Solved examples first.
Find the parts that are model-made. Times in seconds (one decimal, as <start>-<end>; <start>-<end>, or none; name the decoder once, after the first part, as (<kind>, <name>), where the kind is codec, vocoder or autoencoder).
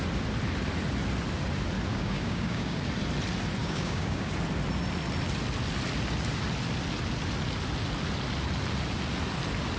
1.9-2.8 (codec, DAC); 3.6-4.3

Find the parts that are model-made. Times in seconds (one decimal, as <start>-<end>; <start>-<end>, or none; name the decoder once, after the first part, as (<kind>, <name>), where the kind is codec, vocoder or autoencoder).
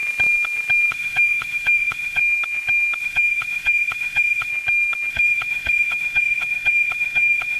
0.9-2.2 (autoencoder, DAC-VAE); 3.0-4.5; 5.1-7.6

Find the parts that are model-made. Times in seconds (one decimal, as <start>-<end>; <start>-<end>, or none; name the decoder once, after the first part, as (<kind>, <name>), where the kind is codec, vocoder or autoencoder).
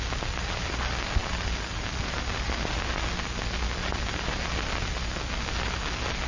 none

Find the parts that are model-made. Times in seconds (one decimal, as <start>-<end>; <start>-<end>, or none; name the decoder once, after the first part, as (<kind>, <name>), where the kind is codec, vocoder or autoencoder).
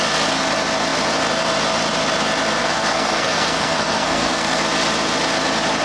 2.6-4.6 (codec, SNAC)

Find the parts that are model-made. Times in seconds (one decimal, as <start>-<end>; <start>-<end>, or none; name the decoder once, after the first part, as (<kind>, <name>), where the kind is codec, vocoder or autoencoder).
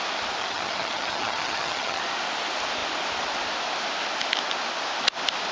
0.4-2.0 (vocoder, HiFi-GAN)